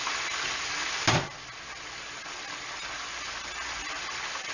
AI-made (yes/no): no